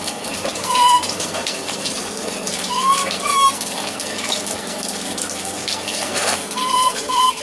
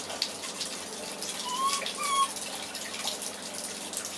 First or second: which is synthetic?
first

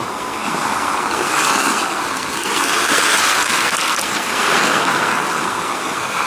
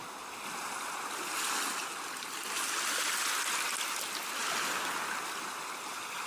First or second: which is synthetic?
first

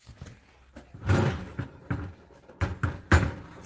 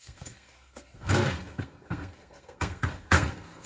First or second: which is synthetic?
second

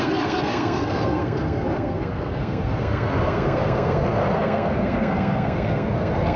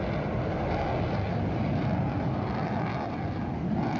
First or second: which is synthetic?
first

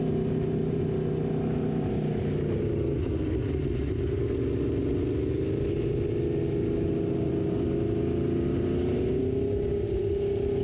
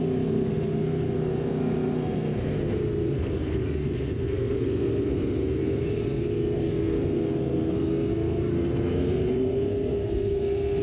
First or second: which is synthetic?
second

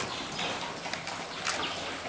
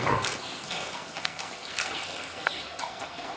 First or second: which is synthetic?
second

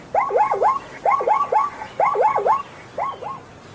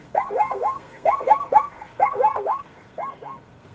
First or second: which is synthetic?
second